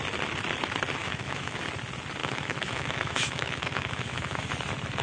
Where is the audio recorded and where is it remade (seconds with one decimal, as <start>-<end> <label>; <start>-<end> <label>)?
0.0-1.0 recorded; 1.0-1.6 remade; 1.6-2.2 recorded; 2.2-4.5 remade; 4.5-5.0 recorded